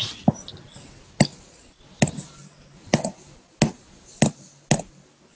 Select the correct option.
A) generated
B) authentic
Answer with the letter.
B